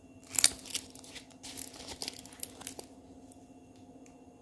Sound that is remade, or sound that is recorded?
recorded